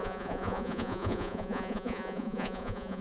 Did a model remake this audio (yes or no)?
yes